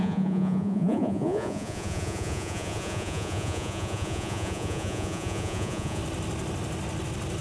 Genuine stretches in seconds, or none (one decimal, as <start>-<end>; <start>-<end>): 6.0-7.4